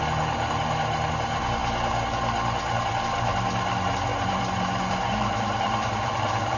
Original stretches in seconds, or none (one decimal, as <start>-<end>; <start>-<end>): 0.0-4.1